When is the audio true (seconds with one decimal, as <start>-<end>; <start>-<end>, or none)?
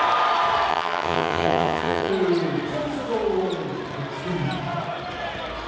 0.0-0.7; 2.1-5.7